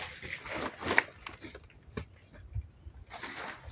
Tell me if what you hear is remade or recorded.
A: recorded